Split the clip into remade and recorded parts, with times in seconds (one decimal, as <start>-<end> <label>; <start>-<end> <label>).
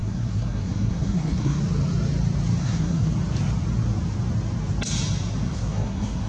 0.0-1.6 remade; 1.6-2.6 recorded; 2.6-3.1 remade; 3.1-5.5 recorded; 5.5-6.3 remade